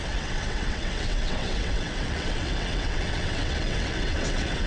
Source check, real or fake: fake